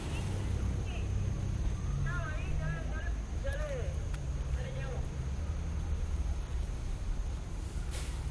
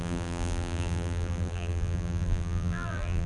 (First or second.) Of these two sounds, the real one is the first